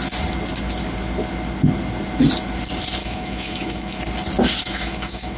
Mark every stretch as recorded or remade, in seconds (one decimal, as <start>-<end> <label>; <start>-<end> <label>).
0.0-3.0 recorded; 3.0-4.0 remade; 4.0-4.6 recorded; 4.6-5.4 remade